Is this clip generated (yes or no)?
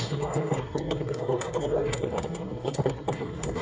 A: yes